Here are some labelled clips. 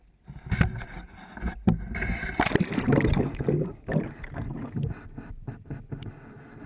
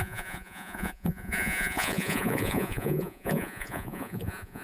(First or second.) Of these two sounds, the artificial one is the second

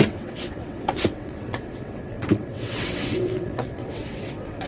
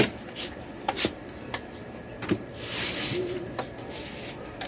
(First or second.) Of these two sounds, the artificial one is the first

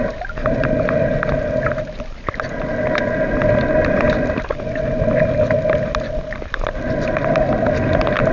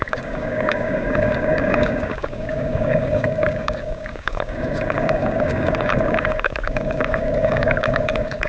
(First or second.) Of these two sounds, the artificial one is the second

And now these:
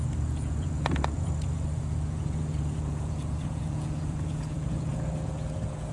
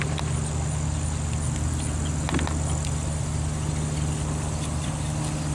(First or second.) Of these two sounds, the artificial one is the first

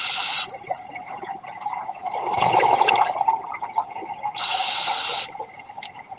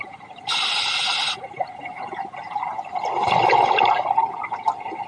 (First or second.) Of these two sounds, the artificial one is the first